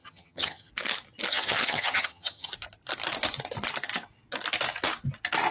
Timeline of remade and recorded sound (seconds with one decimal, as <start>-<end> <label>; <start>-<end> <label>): 0.0-0.7 remade; 0.7-1.3 recorded; 1.3-2.5 remade; 2.5-5.5 recorded